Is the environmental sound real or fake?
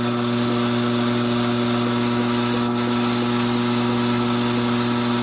real